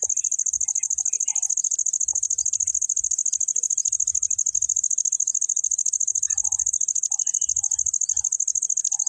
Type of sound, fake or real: real